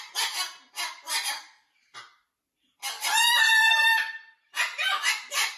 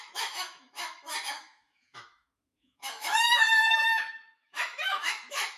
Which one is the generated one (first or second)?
second